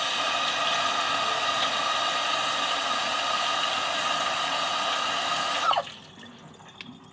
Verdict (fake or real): real